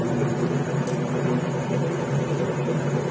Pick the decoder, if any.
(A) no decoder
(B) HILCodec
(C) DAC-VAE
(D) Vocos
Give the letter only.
A